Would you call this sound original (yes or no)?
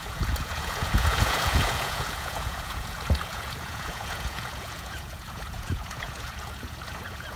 no